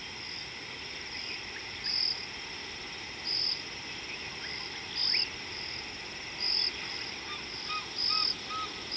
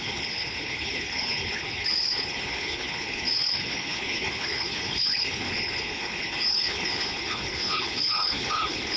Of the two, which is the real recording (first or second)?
first